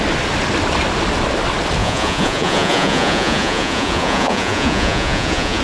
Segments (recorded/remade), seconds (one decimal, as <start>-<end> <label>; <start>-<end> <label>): 0.0-1.8 recorded; 1.8-5.6 remade